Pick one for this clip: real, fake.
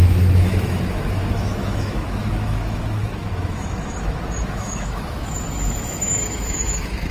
fake